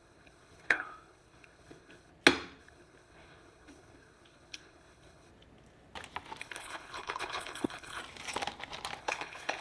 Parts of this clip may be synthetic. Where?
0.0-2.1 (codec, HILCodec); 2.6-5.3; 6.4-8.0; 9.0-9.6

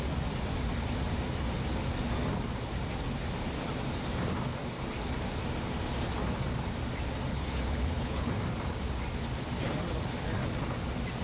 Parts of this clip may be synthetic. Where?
7.3-8.3 (codec, HILCodec)

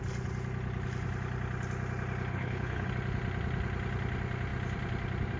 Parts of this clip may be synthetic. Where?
2.3-2.9 (codec, HILCodec)

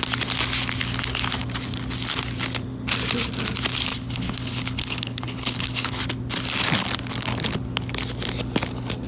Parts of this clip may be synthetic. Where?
3.9-6.0 (codec, HILCodec)

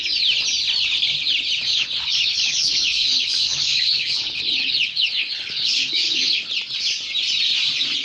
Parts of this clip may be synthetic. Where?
1.7-6.5 (codec, HILCodec)

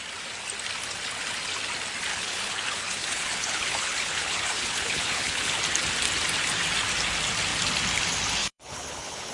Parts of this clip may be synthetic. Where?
2.1-5.6 (codec, HILCodec); 8.4-9.3

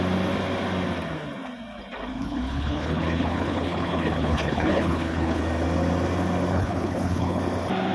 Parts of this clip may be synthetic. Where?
2.1-5.4 (codec, HILCodec); 6.5-7.4

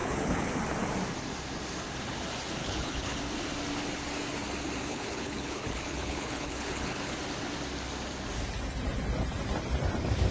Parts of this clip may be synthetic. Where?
0.0-0.6 (codec, HILCodec); 2.6-3.2; 4.9-7.1